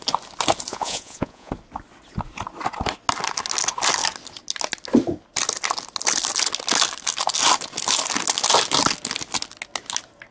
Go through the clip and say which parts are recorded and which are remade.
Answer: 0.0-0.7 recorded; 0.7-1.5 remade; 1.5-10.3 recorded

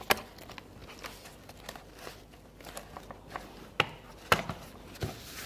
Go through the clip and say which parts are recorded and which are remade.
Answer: 0.0-5.5 recorded

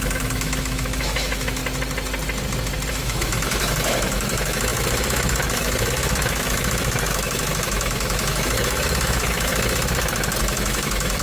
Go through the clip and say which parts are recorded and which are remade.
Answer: 0.0-1.6 remade; 1.6-2.9 recorded; 2.9-9.5 remade; 9.5-10.4 recorded; 10.4-11.2 remade

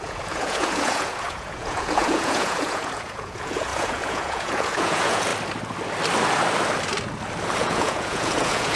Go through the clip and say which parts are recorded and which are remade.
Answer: 0.0-5.3 remade; 5.3-7.6 recorded; 7.6-8.8 remade